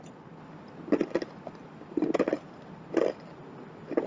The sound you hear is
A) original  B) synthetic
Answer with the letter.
A